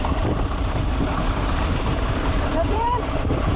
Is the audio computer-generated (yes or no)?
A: yes